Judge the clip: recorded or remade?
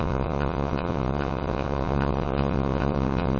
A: remade